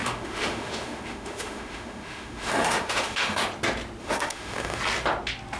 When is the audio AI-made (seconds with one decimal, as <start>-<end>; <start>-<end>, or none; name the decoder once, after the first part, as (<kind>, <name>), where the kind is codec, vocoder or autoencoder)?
0.0-3.4 (autoencoder, DAC-VAE); 4.0-4.8